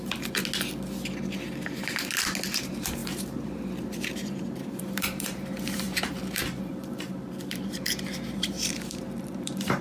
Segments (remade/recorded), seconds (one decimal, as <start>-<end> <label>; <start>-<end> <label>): 0.0-0.4 remade; 0.4-2.6 recorded; 2.6-9.8 remade